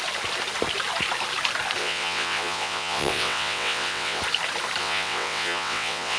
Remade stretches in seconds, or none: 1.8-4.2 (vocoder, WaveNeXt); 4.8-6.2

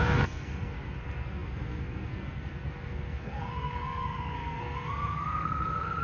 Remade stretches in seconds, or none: 0.0-6.0 (codec, SNAC)

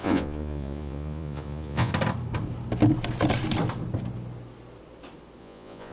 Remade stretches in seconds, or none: 0.0-1.9 (vocoder, Vocos); 5.4-5.9

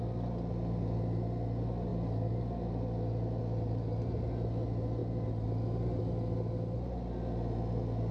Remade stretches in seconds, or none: none

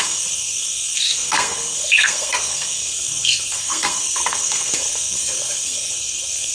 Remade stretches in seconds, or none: 0.0-6.5 (codec, SNAC)